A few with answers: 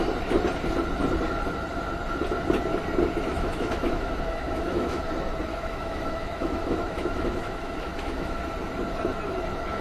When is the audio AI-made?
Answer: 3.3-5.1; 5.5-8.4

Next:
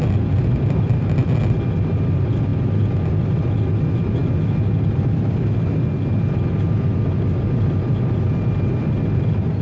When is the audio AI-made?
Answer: none

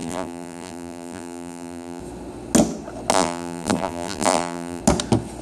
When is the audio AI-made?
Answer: 0.0-2.0; 3.1-4.8

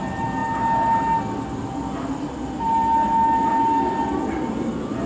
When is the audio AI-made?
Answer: none

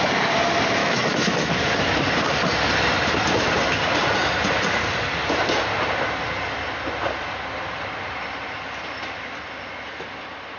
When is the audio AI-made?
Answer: 0.8-1.5

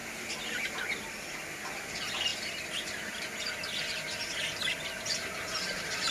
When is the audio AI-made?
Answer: none

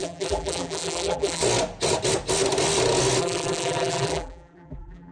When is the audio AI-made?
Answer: 0.0-1.4; 3.2-5.1

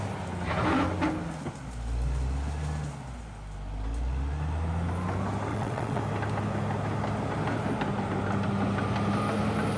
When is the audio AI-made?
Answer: 5.5-6.0